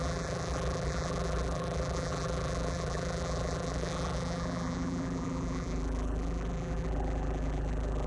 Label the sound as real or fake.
fake